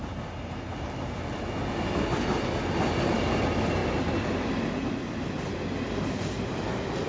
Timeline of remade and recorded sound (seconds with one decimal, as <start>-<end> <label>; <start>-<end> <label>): 0.0-7.1 recorded